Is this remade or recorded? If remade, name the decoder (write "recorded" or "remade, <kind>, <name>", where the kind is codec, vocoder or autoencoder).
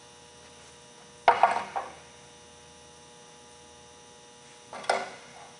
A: recorded